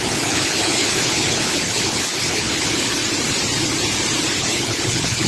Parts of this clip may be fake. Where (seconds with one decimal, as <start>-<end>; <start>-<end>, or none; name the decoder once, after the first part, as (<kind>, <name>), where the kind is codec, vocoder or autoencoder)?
0.0-3.0 (codec, HILCodec); 4.4-5.3